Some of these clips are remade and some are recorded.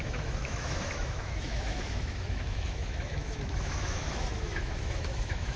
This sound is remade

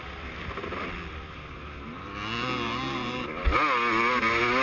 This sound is recorded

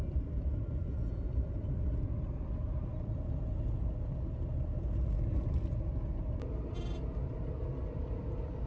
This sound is recorded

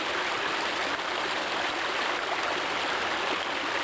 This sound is recorded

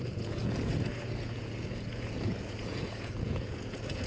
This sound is remade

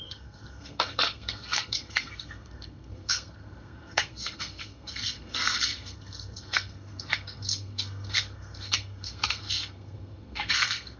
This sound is remade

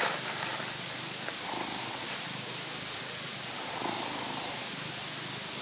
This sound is recorded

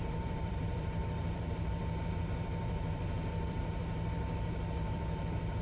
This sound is remade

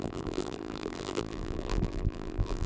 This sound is remade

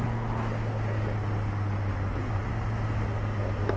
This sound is recorded